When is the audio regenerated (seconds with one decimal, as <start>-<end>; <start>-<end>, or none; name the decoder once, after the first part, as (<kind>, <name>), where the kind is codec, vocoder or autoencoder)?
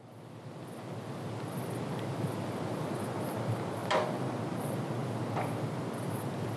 none